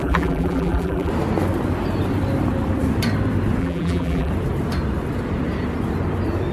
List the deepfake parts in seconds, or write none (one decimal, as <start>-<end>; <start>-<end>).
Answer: 0.0-1.1; 3.6-4.3